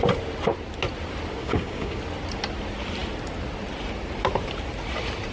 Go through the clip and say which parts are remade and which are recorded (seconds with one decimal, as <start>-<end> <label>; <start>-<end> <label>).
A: 0.0-1.4 recorded; 1.4-2.0 remade; 2.0-5.3 recorded